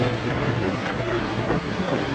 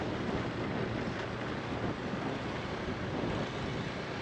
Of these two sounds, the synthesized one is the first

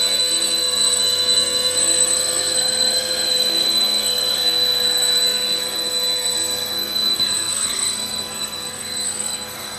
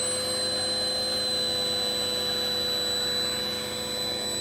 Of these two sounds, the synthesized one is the first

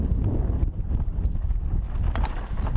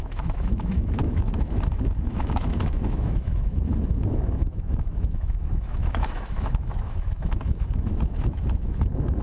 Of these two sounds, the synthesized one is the second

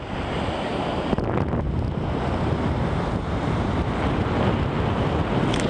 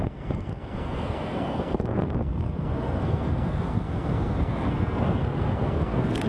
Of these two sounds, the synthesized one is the second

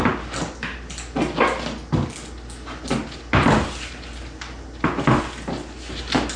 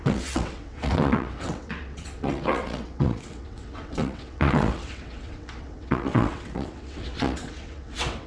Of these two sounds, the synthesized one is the second